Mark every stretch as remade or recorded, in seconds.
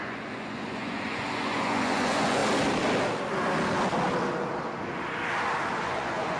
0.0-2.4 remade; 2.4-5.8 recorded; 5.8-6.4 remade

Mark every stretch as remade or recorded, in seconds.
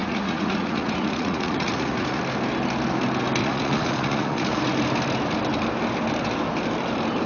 0.0-2.2 remade; 2.2-3.4 recorded; 3.4-4.6 remade; 4.6-7.3 recorded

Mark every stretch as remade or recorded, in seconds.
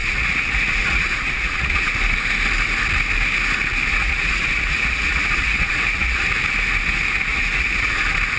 0.0-1.9 remade; 1.9-3.9 recorded; 3.9-6.3 remade; 6.3-7.3 recorded; 7.3-8.0 remade; 8.0-8.4 recorded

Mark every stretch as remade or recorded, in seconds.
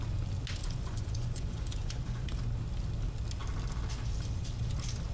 0.0-0.6 recorded; 0.6-2.4 remade; 2.4-5.1 recorded